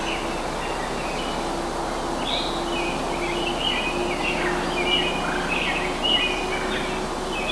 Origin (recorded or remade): recorded